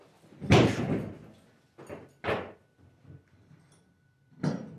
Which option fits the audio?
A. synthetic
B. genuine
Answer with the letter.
B